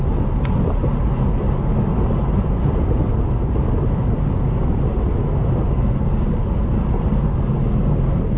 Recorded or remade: recorded